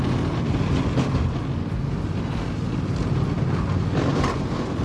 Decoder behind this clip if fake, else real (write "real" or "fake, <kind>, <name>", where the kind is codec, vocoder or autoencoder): real